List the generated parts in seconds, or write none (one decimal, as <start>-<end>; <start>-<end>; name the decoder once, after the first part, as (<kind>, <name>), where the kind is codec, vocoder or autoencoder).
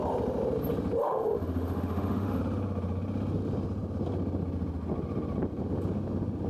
1.0-2.4 (autoencoder, DAC-VAE)